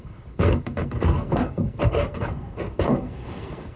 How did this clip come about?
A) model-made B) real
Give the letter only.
A